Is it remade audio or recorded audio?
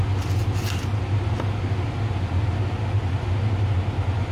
recorded